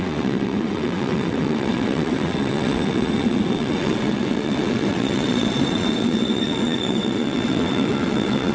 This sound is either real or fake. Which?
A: fake